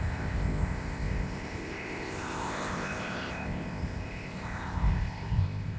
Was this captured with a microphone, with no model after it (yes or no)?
no